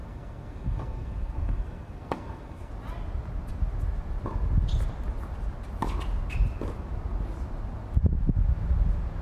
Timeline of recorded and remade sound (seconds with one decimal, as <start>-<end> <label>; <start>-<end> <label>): 0.0-2.7 remade; 2.7-9.2 recorded